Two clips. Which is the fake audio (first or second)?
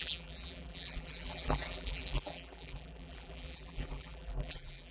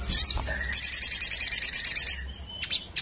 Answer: first